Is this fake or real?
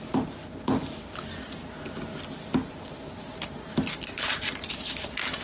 real